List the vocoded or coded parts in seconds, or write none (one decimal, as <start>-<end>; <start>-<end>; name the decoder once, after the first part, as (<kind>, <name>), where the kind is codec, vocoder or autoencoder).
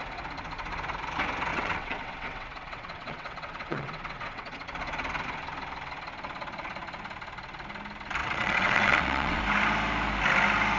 1.5-4.5 (vocoder, WaveNeXt); 8.2-9.4